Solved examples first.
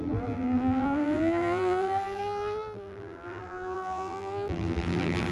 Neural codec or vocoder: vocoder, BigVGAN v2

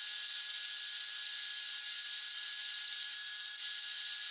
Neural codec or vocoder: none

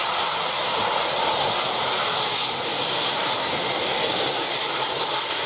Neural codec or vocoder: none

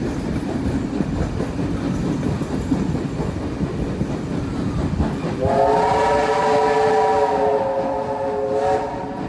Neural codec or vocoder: none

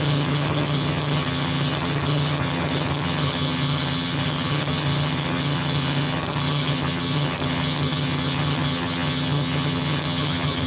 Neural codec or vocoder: vocoder, HiFi-GAN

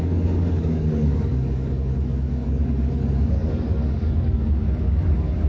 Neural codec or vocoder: codec, DAC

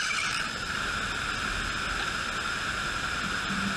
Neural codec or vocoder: none